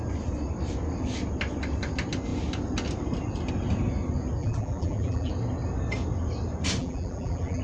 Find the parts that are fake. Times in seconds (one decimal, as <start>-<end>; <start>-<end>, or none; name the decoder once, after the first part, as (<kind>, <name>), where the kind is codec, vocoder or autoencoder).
4.4-5.3 (vocoder, BigVGAN v2); 6.8-7.6